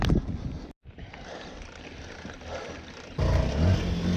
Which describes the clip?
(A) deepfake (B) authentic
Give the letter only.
B